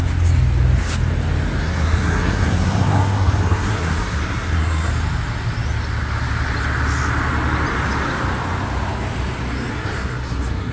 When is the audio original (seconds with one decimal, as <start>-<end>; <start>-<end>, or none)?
0.0-1.6; 4.9-9.7